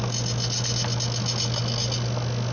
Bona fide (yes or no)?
yes